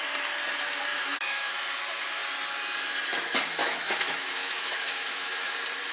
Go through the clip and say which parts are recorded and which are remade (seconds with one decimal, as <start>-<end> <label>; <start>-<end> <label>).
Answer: 0.0-0.9 recorded; 0.9-1.5 remade; 1.5-3.6 recorded; 3.6-5.5 remade; 5.5-5.9 recorded